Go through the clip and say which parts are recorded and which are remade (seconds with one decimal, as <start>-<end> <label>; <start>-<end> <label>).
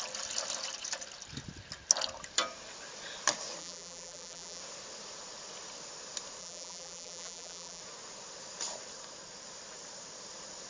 0.0-3.6 recorded; 3.6-4.6 remade; 4.6-6.4 recorded; 6.4-7.8 remade; 7.8-10.7 recorded